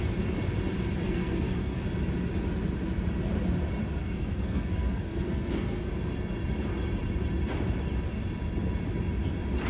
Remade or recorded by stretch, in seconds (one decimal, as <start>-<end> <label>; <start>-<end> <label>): 0.0-1.0 recorded; 1.0-1.8 remade; 1.8-4.0 recorded; 4.0-5.9 remade; 5.9-9.7 recorded